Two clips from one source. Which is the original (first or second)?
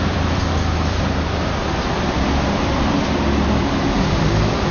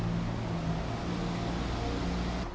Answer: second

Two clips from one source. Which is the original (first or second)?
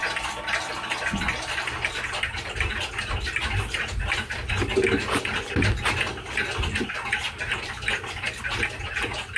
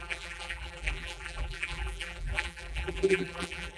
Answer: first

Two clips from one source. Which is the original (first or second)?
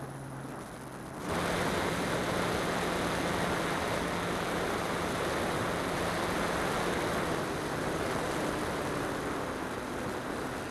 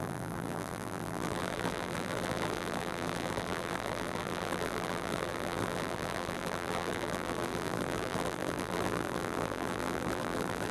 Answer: first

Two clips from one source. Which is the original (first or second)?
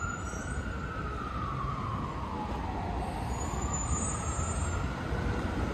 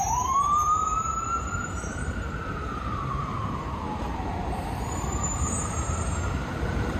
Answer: first